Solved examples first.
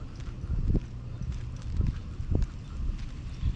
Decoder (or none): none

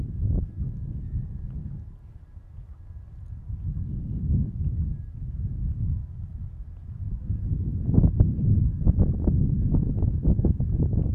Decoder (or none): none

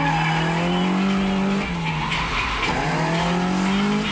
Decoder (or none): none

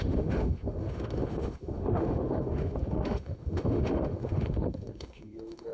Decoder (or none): autoencoder, DAC-VAE